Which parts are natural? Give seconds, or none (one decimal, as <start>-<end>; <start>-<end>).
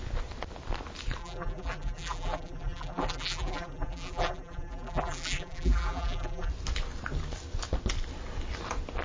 0.0-1.2; 6.5-9.0